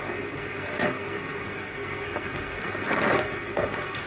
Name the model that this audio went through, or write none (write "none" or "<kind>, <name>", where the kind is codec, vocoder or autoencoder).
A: codec, SNAC